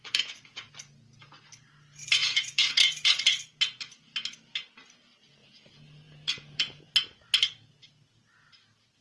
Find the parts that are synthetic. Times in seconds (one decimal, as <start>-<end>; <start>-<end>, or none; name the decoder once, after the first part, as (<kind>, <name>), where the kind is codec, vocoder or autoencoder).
0.0-0.7 (vocoder, Vocos); 2.2-3.2; 5.4-6.8